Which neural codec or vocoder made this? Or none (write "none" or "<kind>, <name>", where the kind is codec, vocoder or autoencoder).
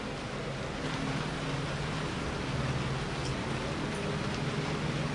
none